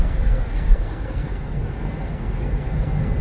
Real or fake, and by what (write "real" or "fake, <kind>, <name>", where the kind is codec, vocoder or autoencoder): fake, codec, SNAC